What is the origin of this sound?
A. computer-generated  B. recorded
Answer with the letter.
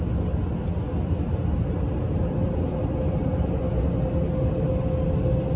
B